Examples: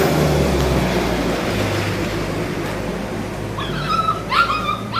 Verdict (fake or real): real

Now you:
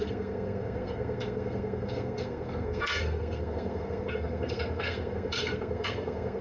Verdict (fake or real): fake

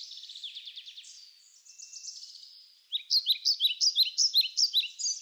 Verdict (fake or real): real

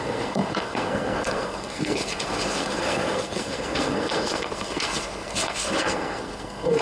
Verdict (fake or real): fake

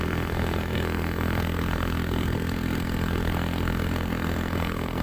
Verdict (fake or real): fake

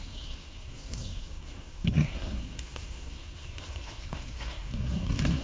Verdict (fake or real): fake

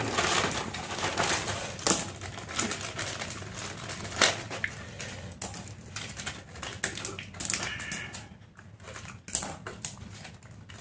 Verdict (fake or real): real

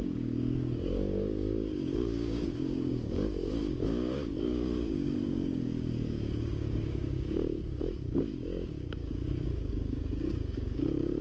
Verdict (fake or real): fake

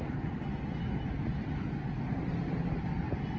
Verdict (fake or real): real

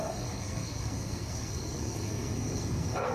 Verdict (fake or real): fake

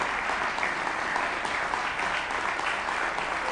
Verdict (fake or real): real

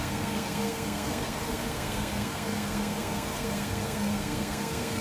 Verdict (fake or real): fake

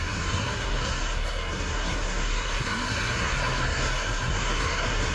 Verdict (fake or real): fake